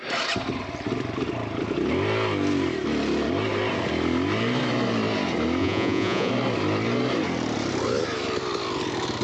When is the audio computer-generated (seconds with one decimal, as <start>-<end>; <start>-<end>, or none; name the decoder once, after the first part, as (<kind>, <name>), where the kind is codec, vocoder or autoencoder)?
5.6-6.3 (vocoder, Vocos)